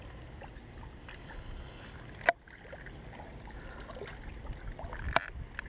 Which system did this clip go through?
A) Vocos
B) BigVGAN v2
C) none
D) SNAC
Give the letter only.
C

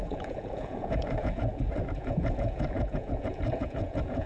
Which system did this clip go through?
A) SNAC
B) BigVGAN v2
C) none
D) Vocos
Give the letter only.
D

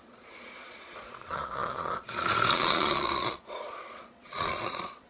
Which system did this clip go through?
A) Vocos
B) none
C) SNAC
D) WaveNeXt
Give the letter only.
A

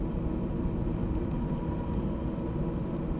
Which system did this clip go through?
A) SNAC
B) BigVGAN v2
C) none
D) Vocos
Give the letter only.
C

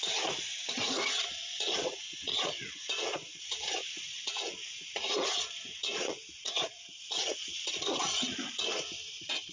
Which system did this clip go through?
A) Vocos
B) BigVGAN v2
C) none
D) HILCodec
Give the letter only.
A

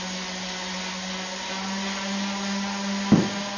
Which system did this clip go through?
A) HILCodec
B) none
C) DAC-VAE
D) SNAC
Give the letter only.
B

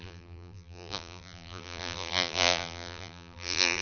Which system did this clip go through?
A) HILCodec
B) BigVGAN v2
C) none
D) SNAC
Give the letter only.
B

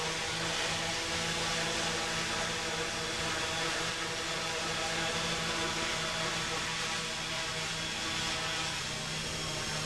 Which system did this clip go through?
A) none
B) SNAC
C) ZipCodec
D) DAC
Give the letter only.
A